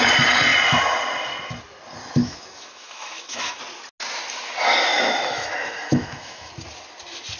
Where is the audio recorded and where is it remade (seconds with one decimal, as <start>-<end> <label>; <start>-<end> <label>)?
0.0-2.2 recorded; 2.2-3.6 remade; 3.6-4.9 recorded; 4.9-6.5 remade; 6.5-7.4 recorded